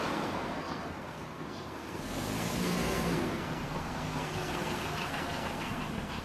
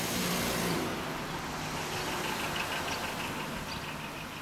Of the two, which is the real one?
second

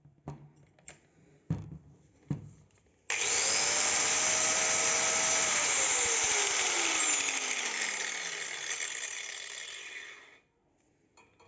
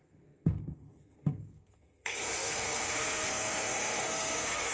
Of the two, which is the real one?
first